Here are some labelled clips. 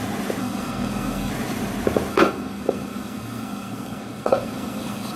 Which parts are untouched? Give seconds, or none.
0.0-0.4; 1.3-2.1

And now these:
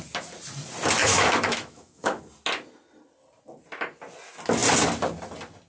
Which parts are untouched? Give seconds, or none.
0.0-1.0; 2.2-5.7

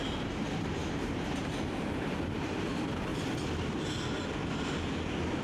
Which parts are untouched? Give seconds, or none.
3.1-5.4

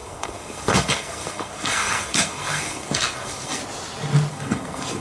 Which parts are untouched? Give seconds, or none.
3.6-4.3